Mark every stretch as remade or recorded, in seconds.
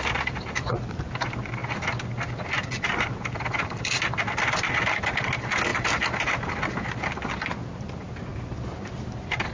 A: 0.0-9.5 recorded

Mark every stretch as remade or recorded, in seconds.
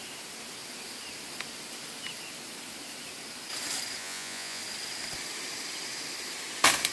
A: 0.0-4.0 recorded; 4.0-4.6 remade; 4.6-6.9 recorded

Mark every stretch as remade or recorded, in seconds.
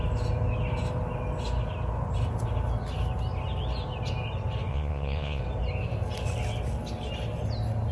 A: 0.0-4.7 recorded; 4.7-5.4 remade; 5.4-7.9 recorded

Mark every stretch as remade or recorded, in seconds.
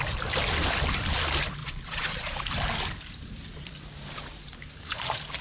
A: 0.0-1.6 recorded; 1.6-2.4 remade; 2.4-5.4 recorded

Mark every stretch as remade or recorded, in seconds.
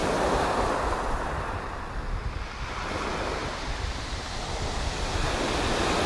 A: 0.0-6.1 recorded